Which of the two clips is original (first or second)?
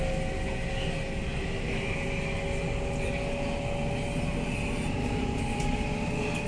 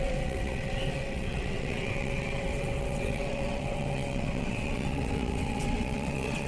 first